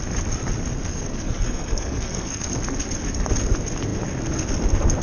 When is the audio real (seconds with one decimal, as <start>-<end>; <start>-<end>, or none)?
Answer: 0.0-0.9; 2.5-5.0